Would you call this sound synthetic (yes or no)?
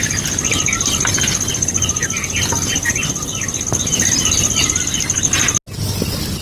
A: no